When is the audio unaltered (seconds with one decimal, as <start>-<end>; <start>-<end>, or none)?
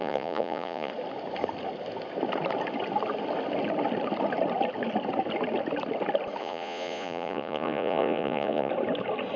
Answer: 0.9-6.4; 8.7-9.4